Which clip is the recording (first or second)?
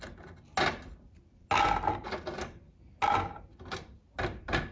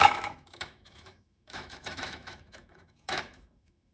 first